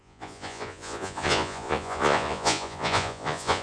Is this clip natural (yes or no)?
no